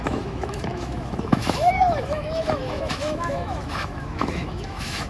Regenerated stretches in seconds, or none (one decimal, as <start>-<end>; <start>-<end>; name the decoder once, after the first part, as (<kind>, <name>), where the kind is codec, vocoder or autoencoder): 0.0-5.1 (autoencoder, DAC-VAE)